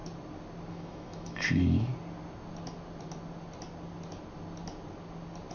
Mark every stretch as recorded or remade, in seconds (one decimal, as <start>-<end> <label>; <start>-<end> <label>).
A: 0.0-0.7 recorded; 0.7-1.9 remade; 1.9-5.5 recorded